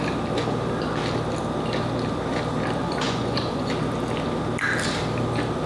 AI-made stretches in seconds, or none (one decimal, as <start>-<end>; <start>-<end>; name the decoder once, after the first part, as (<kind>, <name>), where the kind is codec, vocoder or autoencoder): 2.8-3.7 (vocoder, Vocos)